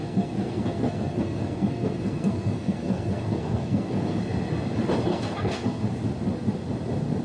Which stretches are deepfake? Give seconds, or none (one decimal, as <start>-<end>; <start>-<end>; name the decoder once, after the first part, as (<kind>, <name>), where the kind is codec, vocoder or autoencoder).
0.0-4.2 (codec, SNAC); 5.1-5.8